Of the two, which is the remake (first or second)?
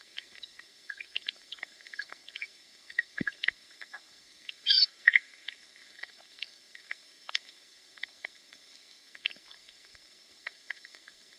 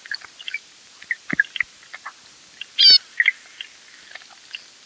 first